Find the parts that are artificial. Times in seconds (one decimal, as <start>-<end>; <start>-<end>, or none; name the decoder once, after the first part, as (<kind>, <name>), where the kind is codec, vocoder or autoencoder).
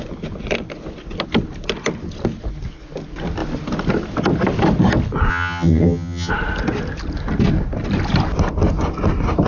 5.3-6.3 (vocoder, HiFi-GAN)